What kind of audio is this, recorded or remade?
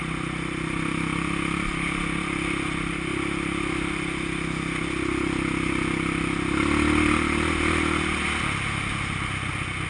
recorded